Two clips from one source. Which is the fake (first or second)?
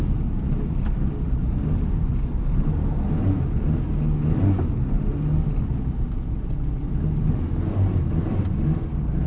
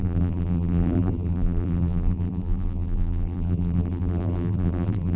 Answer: second